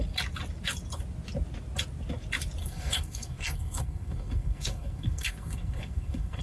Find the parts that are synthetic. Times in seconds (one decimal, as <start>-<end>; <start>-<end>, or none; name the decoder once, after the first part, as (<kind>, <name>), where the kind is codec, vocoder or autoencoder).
2.6-6.4 (codec, SNAC)